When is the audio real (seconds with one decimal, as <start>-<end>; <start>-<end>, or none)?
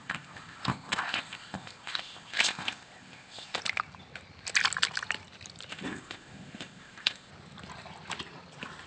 3.6-5.7; 7.3-8.9